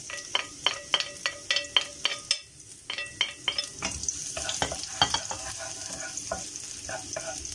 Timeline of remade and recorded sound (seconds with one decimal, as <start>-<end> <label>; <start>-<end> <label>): 0.0-7.5 recorded